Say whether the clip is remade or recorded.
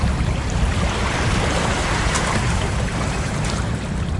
remade